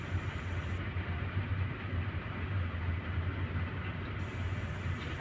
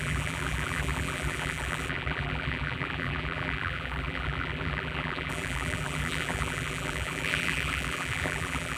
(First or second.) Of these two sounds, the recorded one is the first